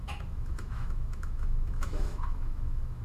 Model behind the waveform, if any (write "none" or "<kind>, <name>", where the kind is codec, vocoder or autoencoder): autoencoder, DAC-VAE